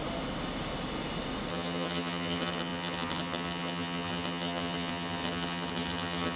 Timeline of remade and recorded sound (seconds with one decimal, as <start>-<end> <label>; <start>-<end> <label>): 0.0-1.5 recorded; 1.5-6.3 remade